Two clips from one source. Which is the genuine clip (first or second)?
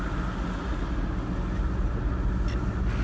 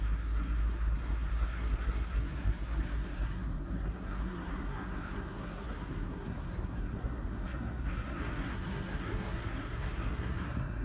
first